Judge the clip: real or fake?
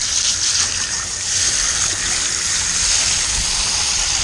fake